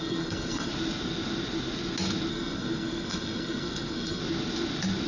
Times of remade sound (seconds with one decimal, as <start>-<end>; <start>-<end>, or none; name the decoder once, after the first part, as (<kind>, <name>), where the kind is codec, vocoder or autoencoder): 0.0-0.7 (codec, SNAC); 2.3-4.2